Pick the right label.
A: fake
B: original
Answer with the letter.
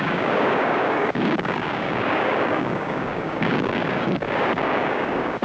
A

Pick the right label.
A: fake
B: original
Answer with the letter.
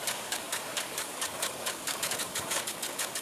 A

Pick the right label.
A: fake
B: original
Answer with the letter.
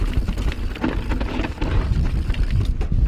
B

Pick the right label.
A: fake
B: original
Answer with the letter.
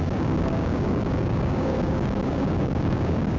A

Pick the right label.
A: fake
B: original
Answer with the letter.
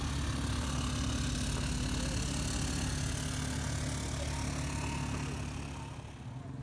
B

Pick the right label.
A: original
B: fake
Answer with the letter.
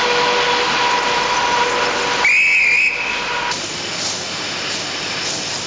A